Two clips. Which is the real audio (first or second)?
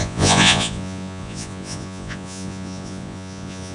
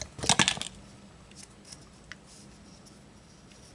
second